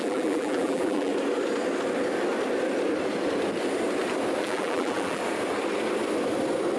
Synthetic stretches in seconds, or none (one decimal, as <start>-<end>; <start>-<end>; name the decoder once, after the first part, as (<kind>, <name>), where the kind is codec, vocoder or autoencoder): 0.0-1.1 (vocoder, BigVGAN v2); 4.4-5.2